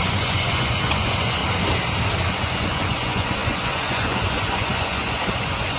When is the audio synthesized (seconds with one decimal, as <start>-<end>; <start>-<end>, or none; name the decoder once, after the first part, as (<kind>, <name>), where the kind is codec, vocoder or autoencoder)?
0.0-1.4 (vocoder, Vocos); 2.3-5.8